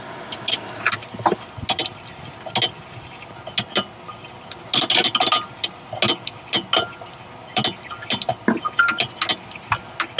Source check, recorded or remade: recorded